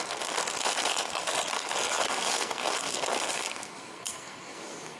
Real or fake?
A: fake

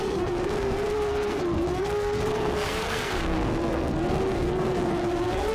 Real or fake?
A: fake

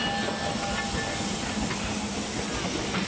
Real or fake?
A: real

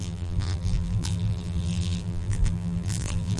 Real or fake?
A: fake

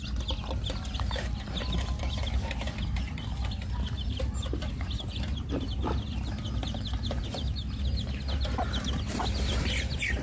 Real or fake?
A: real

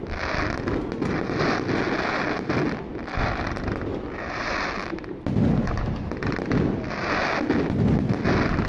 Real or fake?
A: real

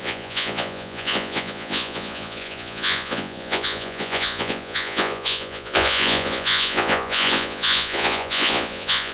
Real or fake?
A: fake